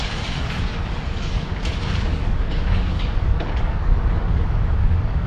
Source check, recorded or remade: remade